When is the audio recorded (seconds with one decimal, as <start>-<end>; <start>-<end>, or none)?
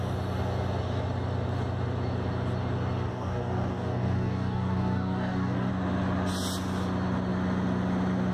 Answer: 0.0-3.1; 5.7-8.3